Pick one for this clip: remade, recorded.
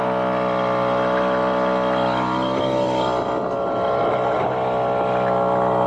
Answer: recorded